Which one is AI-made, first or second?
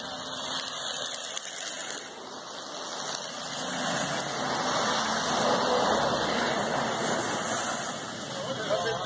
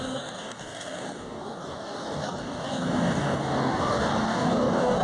second